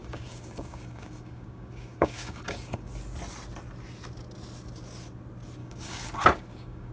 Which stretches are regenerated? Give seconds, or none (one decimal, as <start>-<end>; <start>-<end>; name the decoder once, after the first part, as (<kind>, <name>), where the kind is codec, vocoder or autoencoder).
0.0-2.9 (codec, DAC); 5.6-6.9